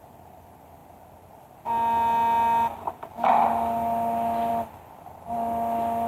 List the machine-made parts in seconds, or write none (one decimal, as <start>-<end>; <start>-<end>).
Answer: none